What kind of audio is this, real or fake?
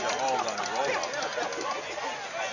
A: real